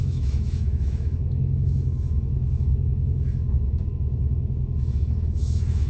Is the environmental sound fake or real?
fake